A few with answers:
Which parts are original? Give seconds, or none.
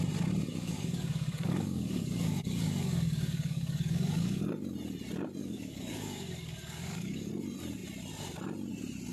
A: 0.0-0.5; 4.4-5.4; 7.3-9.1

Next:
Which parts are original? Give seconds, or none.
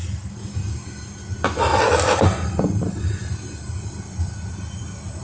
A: 0.0-5.2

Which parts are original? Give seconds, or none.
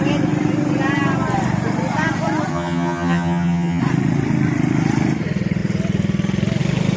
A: 0.0-2.5; 3.8-7.0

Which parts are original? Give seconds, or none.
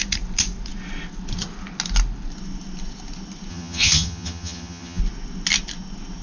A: 0.0-3.5; 5.0-6.2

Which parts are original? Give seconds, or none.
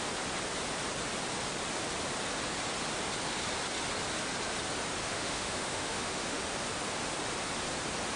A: 0.0-5.0; 6.4-8.2